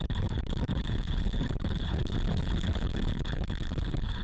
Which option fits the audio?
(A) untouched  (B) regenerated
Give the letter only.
B